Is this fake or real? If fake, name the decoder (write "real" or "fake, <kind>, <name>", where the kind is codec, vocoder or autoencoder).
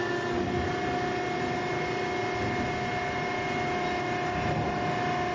real